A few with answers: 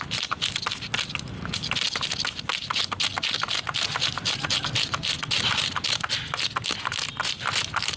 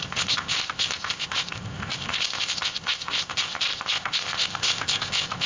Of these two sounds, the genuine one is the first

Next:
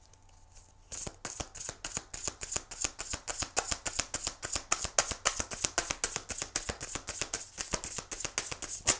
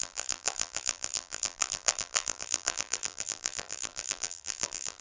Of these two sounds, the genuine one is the first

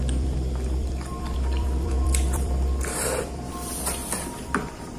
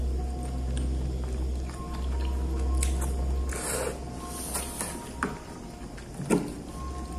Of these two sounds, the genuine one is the second